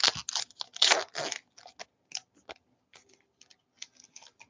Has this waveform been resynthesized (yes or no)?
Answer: no